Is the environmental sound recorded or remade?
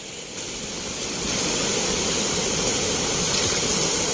recorded